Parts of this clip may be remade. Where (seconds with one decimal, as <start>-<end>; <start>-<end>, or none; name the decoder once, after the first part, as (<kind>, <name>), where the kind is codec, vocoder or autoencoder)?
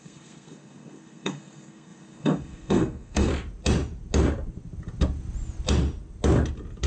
0.0-3.3 (codec, SNAC)